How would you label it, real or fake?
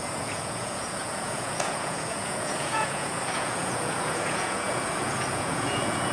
fake